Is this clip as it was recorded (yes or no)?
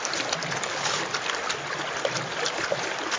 yes